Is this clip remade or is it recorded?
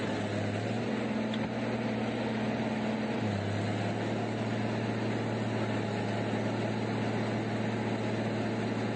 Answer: recorded